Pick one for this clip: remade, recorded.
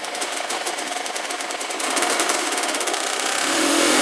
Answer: remade